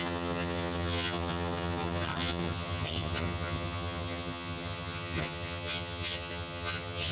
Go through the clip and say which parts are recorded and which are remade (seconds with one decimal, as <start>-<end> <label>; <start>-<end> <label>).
0.0-7.1 remade